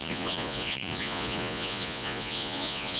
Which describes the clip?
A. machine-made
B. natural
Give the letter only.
A